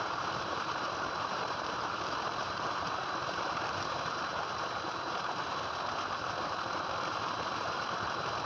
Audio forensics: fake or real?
fake